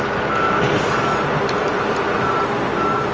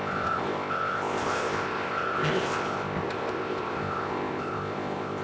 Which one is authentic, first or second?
first